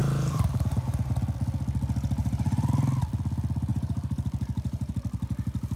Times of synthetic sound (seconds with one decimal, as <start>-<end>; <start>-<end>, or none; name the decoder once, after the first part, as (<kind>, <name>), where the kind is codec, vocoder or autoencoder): 0.0-1.1 (vocoder, BigVGAN v2); 2.2-2.7; 3.7-4.9